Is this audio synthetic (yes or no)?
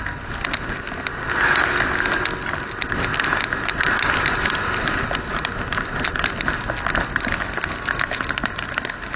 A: no